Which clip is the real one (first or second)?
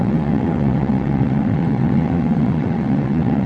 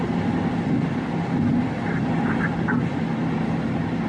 second